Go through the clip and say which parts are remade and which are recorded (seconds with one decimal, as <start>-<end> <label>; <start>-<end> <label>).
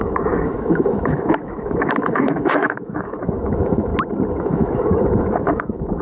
0.0-3.9 remade; 3.9-4.4 recorded; 4.4-6.0 remade